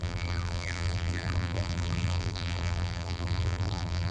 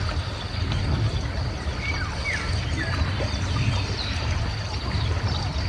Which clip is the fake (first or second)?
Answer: first